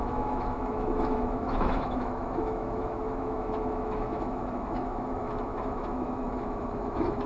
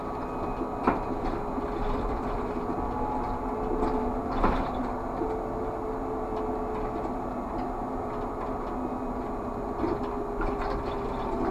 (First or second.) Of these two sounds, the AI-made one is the first